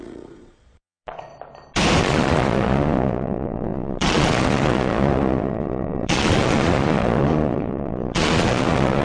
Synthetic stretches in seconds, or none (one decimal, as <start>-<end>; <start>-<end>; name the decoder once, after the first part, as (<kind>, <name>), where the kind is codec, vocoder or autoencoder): 0.0-1.3 (vocoder, Vocos); 2.0-9.0